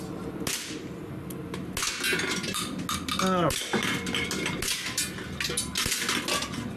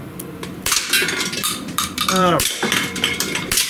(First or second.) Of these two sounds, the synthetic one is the second